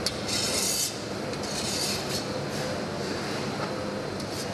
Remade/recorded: recorded